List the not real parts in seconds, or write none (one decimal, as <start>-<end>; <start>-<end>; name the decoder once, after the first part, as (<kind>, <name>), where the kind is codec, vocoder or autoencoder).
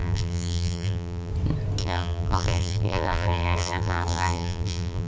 0.0-1.3 (vocoder, BigVGAN v2); 1.8-5.1